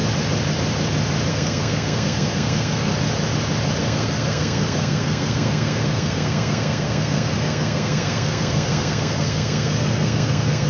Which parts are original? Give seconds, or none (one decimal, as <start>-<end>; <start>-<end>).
0.0-1.3; 2.9-3.8